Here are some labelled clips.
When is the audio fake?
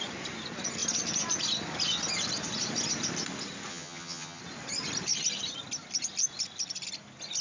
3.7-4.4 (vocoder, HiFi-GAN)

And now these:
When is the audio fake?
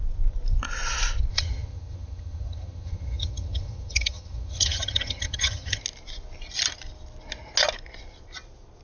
1.3-5.8 (vocoder, HiFi-GAN)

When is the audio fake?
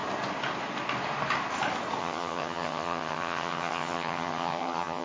2.0-5.0 (vocoder, HiFi-GAN)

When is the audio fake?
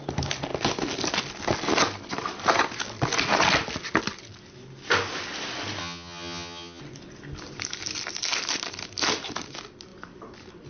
5.8-6.8 (vocoder, HiFi-GAN)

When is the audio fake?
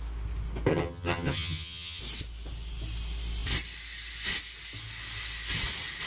0.7-2.0 (vocoder, HiFi-GAN)